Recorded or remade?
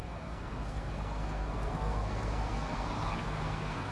remade